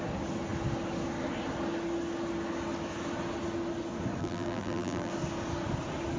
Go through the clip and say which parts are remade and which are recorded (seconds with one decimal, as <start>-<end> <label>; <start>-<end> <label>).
0.0-4.2 recorded; 4.2-5.1 remade; 5.1-6.2 recorded